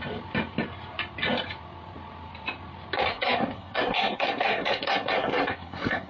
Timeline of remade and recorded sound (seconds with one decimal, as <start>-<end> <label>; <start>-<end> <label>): 0.0-3.1 recorded; 3.1-6.1 remade